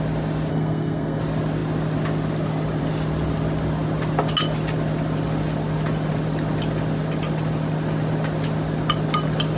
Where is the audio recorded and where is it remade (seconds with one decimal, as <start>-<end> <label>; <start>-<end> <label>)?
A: 0.0-0.5 recorded; 0.5-1.2 remade; 1.2-9.6 recorded